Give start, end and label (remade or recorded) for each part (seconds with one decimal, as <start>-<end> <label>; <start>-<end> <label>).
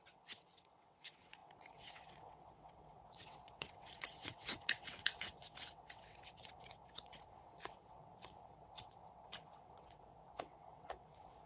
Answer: 0.0-11.5 remade